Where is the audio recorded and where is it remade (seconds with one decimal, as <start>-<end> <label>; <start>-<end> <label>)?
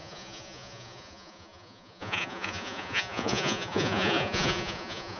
0.0-5.2 remade